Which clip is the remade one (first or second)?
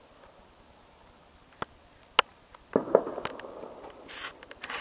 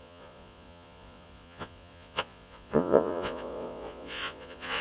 second